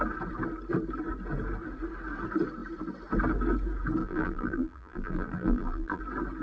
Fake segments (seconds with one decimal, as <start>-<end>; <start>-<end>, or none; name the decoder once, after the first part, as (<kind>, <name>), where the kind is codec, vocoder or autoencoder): 4.0-6.0 (vocoder, BigVGAN v2)

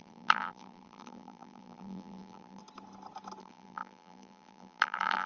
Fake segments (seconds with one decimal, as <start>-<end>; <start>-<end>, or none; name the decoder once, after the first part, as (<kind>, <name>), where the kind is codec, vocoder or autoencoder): 0.0-2.6 (vocoder, BigVGAN v2); 3.4-5.3

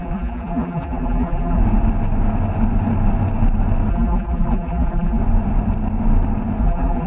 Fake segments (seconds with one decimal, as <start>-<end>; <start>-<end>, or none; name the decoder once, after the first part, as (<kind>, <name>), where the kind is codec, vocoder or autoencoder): 0.0-1.6 (vocoder, BigVGAN v2); 3.9-5.2; 6.6-7.1